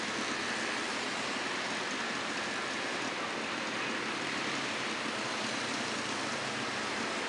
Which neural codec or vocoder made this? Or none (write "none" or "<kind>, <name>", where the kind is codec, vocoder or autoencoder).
none